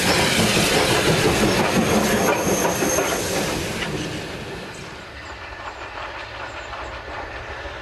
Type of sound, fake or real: real